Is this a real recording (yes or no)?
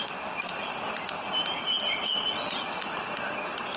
yes